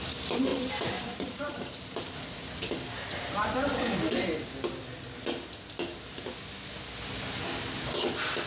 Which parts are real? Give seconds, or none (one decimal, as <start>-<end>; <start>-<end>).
0.0-0.5; 3.5-8.5